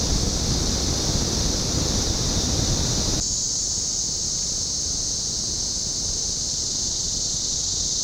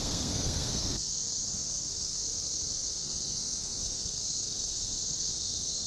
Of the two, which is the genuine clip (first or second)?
first